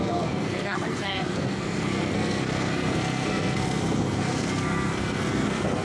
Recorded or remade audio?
remade